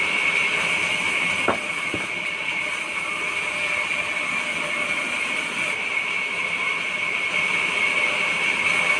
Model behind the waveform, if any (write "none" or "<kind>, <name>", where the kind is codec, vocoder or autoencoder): none